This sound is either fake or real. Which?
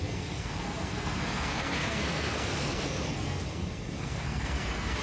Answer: fake